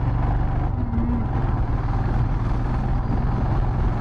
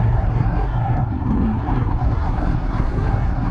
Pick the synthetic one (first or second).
second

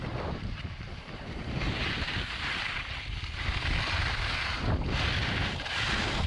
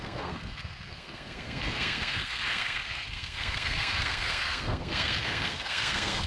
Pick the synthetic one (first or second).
second